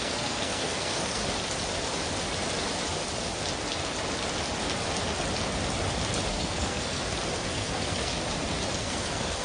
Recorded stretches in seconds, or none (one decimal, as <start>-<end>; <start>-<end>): 1.2-6.3; 7.0-7.5; 8.1-8.8